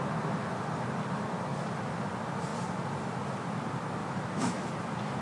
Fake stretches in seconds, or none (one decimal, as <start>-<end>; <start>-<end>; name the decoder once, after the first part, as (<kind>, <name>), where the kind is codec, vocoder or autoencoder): 4.0-4.7 (autoencoder, DAC-VAE)